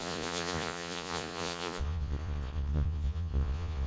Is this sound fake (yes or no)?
yes